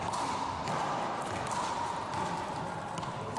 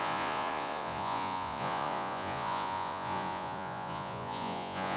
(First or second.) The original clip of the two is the first